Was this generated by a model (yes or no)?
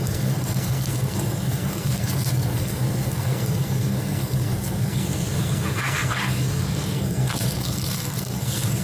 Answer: yes